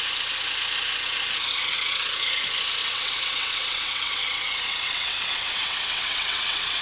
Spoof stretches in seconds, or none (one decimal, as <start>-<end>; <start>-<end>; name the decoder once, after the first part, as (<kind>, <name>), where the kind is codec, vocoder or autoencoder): 2.8-6.8 (vocoder, WaveNeXt)